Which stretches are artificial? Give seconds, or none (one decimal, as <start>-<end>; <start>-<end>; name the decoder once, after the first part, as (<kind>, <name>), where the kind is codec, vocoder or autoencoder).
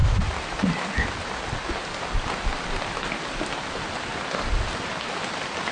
4.1-5.0 (vocoder, BigVGAN v2)